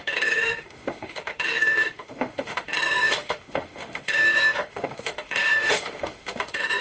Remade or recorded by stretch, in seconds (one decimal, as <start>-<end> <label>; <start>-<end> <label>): 0.0-6.8 remade